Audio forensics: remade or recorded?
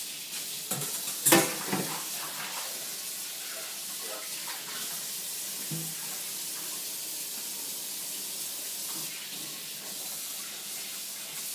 recorded